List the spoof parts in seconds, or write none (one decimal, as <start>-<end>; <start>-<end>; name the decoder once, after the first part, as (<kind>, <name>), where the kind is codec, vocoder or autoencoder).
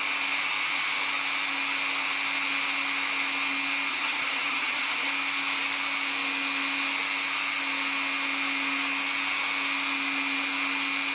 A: 3.9-5.1 (vocoder, HiFi-GAN)